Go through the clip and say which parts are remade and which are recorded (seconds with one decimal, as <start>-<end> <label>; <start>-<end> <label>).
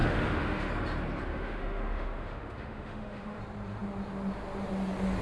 0.0-0.7 remade; 0.7-1.3 recorded; 1.3-3.4 remade; 3.4-5.2 recorded